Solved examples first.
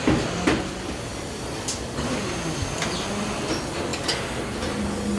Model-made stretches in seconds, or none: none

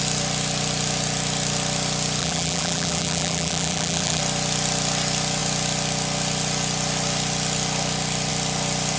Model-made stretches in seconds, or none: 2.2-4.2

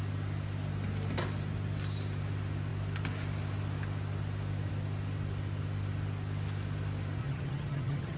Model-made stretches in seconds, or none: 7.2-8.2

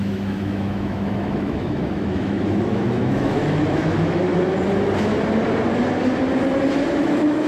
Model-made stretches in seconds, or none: 0.0-4.3; 6.9-7.5